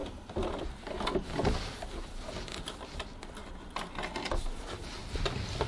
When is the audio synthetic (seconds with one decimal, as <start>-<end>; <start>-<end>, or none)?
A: none